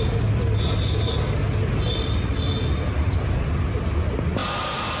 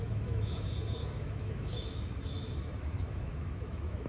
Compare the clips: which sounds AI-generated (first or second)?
second